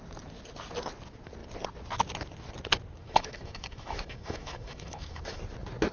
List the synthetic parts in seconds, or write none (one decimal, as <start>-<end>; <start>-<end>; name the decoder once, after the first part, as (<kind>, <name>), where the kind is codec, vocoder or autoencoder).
3.0-5.4 (autoencoder, DAC-VAE)